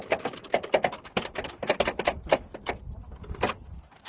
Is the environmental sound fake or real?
real